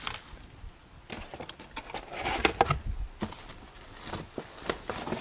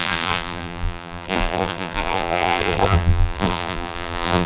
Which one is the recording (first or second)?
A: first